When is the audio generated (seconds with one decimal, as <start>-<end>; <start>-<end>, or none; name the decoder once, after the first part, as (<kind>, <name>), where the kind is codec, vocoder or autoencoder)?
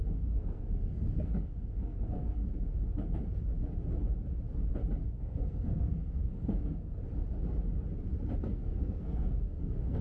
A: 0.0-2.4 (codec, SNAC); 5.0-7.0; 8.4-10.0